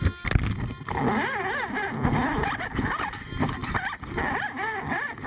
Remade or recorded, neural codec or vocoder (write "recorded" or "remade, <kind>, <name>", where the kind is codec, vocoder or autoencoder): recorded